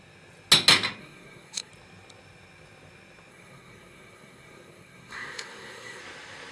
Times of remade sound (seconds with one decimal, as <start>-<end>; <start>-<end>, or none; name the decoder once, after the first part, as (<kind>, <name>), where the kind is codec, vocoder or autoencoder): 1.0-1.7 (codec, SNAC); 3.3-6.0